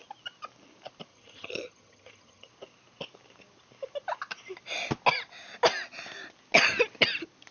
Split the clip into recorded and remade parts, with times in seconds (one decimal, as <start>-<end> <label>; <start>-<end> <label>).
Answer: 0.0-1.1 recorded; 1.1-2.5 remade; 2.5-7.5 recorded